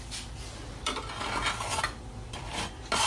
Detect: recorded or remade recorded